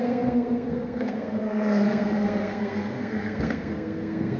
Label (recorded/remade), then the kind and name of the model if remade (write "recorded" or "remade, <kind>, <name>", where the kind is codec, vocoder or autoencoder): remade, codec, SNAC